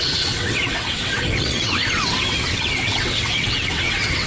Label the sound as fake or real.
fake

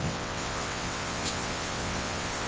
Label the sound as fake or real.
fake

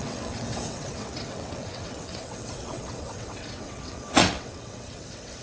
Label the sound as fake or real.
fake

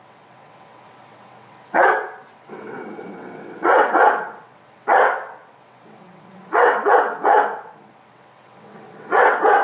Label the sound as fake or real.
fake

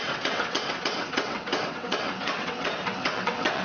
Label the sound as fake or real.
fake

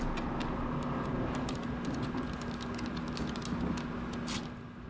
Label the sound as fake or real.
real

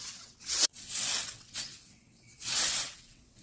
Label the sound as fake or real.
fake